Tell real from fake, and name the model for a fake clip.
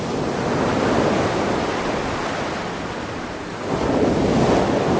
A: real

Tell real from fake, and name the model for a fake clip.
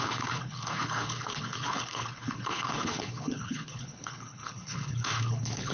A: fake, codec, HILCodec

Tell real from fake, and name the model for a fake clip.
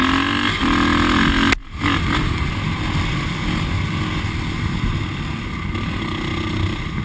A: real